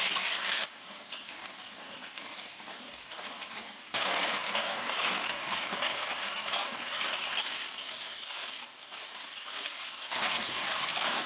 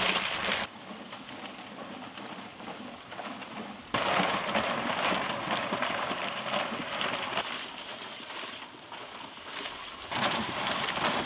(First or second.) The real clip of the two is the second